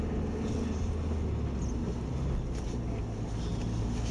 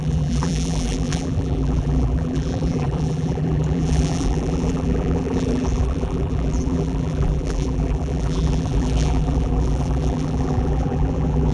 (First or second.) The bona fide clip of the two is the first